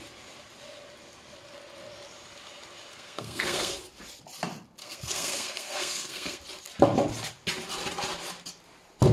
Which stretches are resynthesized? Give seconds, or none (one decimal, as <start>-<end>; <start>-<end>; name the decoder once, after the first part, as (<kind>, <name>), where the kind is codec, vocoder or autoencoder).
2.9-3.8 (codec, SNAC); 4.8-6.4